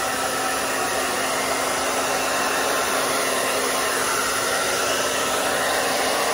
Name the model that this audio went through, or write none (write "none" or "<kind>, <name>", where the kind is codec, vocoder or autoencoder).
none